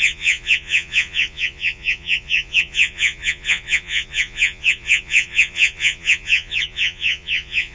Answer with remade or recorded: remade